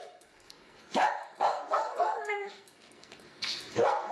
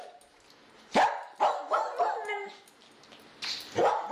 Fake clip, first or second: first